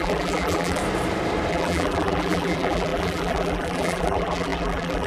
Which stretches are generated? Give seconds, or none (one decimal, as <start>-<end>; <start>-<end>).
0.0-0.8; 1.5-5.1